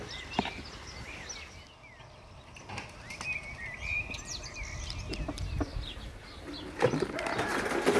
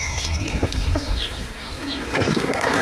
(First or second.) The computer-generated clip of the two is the second